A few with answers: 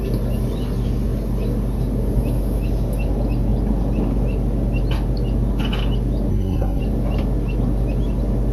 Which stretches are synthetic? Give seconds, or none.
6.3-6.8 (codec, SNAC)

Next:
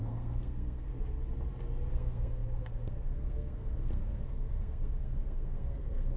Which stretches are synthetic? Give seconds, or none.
0.0-0.9 (codec, SNAC); 1.9-6.2

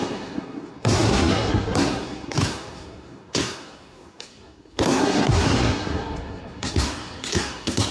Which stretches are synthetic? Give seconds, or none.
0.0-7.9 (codec, SNAC)